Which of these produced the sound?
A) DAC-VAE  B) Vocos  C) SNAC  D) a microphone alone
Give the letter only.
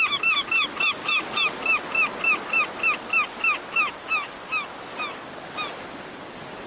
D